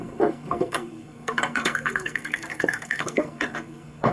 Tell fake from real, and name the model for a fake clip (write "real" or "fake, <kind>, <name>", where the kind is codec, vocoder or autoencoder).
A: fake, codec, SNAC